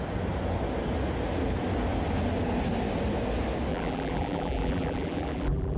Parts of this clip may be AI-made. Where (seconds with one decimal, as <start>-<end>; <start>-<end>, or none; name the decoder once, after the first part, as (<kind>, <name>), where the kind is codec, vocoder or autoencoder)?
3.7-5.8 (vocoder, BigVGAN v2)